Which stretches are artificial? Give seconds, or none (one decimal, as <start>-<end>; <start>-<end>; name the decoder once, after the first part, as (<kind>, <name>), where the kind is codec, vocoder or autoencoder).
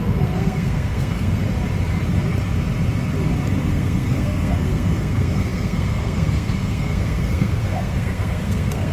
0.0-1.4 (codec, SNAC); 3.7-8.9